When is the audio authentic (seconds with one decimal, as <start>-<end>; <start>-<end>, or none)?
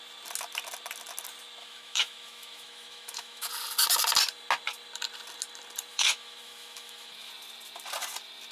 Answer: 0.0-1.6; 3.5-5.9; 7.3-8.5